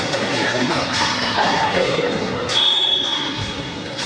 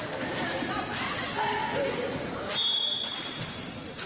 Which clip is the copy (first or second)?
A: first